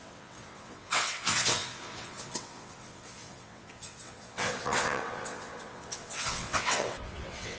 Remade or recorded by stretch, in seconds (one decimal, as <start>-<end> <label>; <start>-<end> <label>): 0.0-7.6 remade